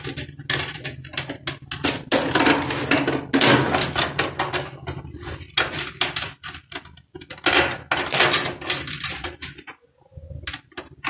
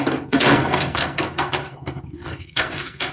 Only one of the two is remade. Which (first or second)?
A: second